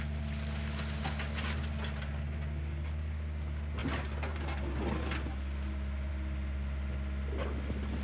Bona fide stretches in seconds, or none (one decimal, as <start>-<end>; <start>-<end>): 0.0-8.0

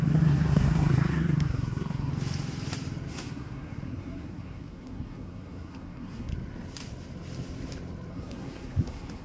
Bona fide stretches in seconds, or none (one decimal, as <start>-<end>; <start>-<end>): 2.1-3.1; 6.3-8.1

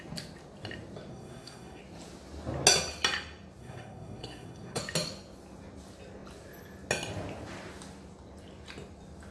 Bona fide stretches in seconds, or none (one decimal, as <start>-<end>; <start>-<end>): 0.0-1.1; 1.8-3.6; 4.8-9.3

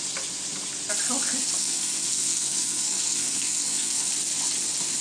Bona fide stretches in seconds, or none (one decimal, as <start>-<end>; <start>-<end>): 0.0-1.6; 4.1-5.0

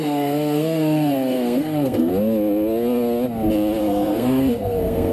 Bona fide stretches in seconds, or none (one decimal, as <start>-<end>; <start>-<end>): 2.1-3.8

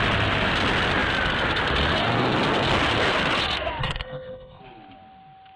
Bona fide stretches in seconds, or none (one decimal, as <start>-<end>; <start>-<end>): 0.0-3.8; 4.6-5.6